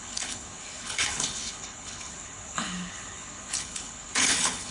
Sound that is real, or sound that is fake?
fake